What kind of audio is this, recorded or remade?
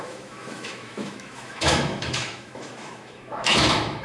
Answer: remade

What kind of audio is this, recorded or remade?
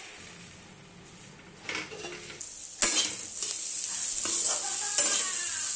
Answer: recorded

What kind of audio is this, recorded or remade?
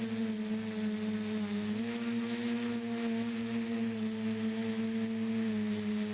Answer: recorded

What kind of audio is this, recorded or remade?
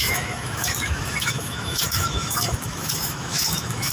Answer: remade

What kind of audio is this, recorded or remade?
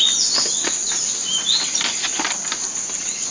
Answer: recorded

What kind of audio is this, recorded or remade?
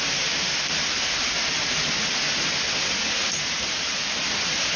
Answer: recorded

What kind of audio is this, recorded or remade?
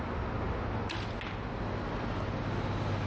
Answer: recorded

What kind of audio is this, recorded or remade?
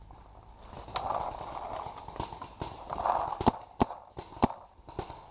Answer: recorded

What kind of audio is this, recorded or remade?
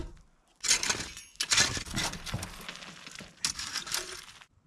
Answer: recorded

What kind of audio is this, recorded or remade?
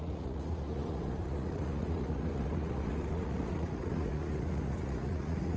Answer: remade